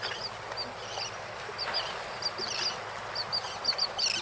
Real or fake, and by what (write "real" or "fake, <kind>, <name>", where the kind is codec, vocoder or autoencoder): real